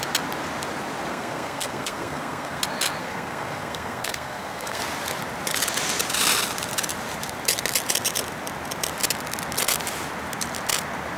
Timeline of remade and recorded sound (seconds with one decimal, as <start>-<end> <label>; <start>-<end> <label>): 0.0-1.1 recorded; 1.1-2.6 remade; 2.6-3.0 recorded; 3.0-4.8 remade; 4.8-11.2 recorded